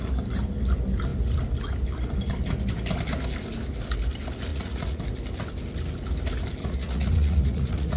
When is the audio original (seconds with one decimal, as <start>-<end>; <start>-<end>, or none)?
0.0-4.5; 5.0-6.6